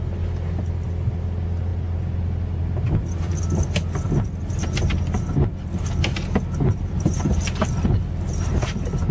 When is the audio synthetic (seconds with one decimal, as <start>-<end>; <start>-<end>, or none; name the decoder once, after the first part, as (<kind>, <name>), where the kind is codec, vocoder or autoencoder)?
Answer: none